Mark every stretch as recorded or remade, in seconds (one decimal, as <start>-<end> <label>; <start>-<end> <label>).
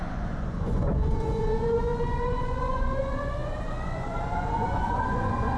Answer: 0.0-5.6 remade